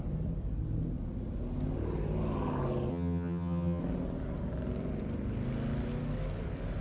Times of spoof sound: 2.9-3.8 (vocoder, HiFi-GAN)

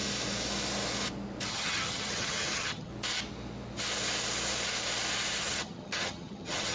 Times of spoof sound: 1.5-2.9 (vocoder, HiFi-GAN); 5.4-6.7

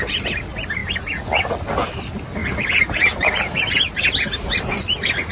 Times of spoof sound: none

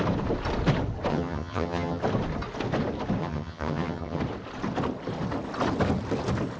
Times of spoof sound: 1.1-2.0 (vocoder, HiFi-GAN); 3.2-4.2

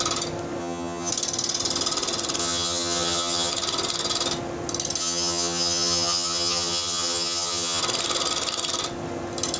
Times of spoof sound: 0.6-1.1 (vocoder, HiFi-GAN); 2.4-3.5; 5.0-7.8

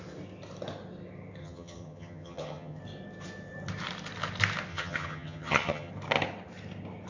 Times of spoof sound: 1.4-2.8 (vocoder, HiFi-GAN); 4.7-5.9

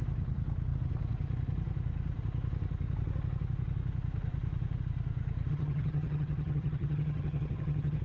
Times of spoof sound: 5.5-8.0 (vocoder, HiFi-GAN)

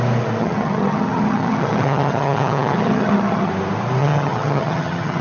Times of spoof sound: 0.4-3.5 (vocoder, HiFi-GAN); 4.0-5.2